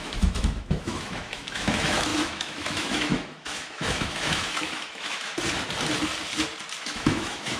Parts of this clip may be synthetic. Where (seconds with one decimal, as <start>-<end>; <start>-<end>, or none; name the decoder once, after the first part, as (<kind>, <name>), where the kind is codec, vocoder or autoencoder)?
0.0-5.3 (autoencoder, DAC-VAE); 6.8-7.6